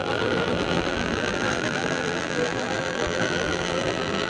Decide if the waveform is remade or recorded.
remade